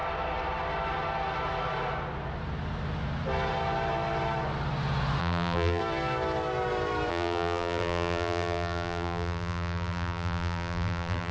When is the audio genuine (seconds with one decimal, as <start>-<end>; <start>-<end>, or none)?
0.0-5.2; 5.8-7.1